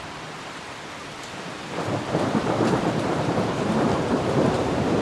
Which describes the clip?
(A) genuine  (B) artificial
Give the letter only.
B